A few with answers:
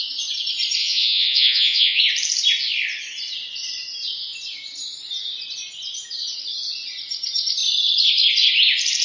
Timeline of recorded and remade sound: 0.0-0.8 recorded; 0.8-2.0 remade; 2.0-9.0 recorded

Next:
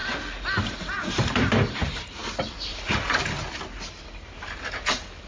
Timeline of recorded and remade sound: 0.0-0.6 recorded; 0.6-2.2 remade; 2.2-4.0 recorded; 4.0-5.3 remade

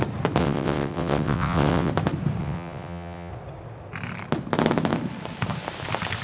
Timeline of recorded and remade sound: 0.0-0.4 recorded; 0.4-1.9 remade; 1.9-2.4 recorded; 2.4-3.3 remade; 3.3-6.2 recorded

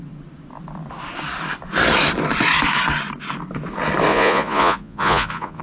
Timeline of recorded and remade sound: 0.0-4.1 recorded; 4.1-5.6 remade

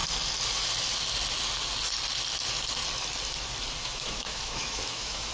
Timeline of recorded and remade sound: 0.0-3.8 recorded; 3.8-5.3 remade

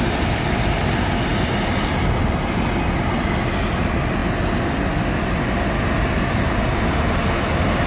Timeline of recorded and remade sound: 0.0-7.9 recorded

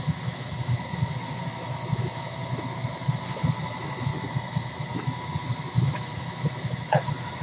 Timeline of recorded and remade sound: 0.0-4.1 remade; 4.1-4.8 recorded; 4.8-7.4 remade